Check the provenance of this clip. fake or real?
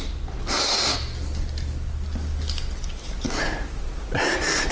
real